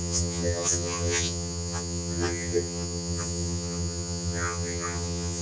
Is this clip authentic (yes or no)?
no